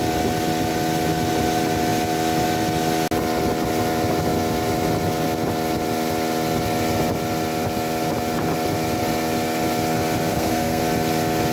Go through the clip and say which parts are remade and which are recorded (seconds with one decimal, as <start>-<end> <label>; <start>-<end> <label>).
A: 0.0-10.3 recorded; 10.3-10.8 remade; 10.8-11.5 recorded